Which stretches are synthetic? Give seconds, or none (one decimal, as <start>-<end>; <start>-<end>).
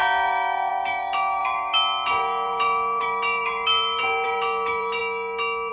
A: 0.0-5.0